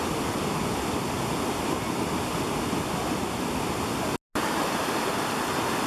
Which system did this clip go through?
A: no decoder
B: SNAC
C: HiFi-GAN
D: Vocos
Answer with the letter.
A